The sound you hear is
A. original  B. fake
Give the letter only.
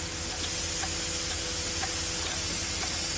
A